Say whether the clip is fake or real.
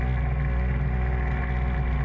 real